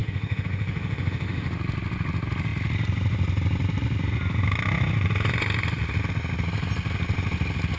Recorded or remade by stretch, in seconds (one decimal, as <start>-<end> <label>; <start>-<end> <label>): 0.0-1.5 remade; 1.5-7.8 recorded